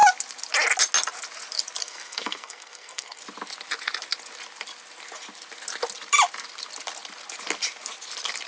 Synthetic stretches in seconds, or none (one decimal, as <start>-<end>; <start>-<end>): 1.8-3.2